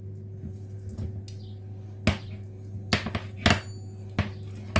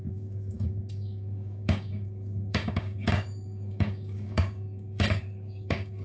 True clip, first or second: first